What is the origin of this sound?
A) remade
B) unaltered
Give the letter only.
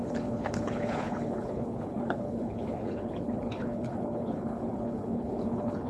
A